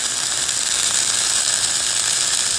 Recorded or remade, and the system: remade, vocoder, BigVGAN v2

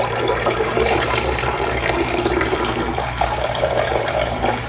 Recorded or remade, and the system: remade, vocoder, BigVGAN v2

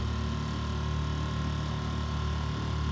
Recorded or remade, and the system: recorded